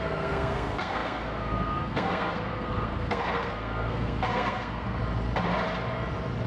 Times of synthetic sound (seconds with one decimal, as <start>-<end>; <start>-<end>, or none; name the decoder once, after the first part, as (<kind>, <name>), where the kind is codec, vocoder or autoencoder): 0.0-5.0 (codec, SNAC)